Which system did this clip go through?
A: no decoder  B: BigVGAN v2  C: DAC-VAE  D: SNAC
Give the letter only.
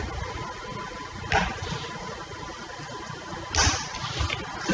A